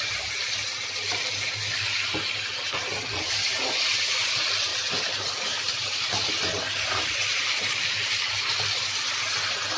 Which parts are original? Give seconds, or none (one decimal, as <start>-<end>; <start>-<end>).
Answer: 0.0-9.8